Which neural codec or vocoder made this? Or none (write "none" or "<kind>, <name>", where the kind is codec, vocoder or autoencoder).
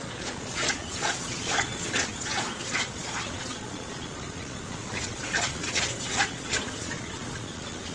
vocoder, Vocos